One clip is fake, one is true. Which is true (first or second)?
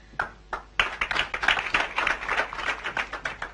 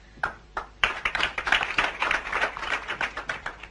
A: first